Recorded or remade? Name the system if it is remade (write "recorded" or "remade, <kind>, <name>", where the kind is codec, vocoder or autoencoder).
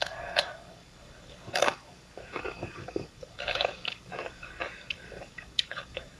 remade, codec, DAC